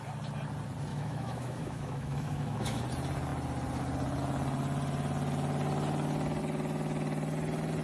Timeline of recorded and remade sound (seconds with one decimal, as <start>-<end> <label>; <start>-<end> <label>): 0.0-0.9 recorded; 0.9-2.8 remade; 2.8-7.8 recorded